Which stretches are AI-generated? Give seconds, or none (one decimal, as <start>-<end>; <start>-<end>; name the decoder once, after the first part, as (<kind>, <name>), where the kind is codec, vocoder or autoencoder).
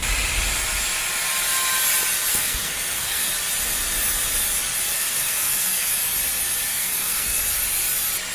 2.3-3.3 (codec, SNAC); 4.9-5.9; 6.7-7.4